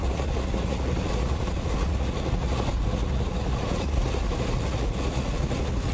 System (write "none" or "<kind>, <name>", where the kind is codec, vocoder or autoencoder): vocoder, Vocos